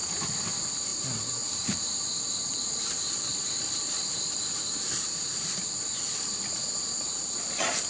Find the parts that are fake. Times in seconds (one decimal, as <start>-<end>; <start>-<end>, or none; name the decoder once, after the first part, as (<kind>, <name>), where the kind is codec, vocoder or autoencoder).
0.9-5.6 (vocoder, BigVGAN v2)